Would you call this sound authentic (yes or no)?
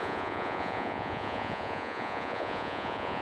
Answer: no